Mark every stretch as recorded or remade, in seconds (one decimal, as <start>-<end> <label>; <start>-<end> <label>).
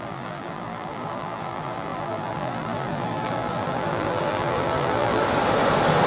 0.0-5.2 remade; 5.2-6.1 recorded